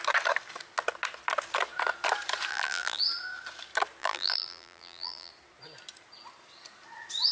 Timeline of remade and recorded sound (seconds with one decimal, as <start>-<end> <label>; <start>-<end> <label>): 0.0-2.5 recorded; 2.5-3.0 remade; 3.0-4.0 recorded; 4.0-5.3 remade; 5.3-7.3 recorded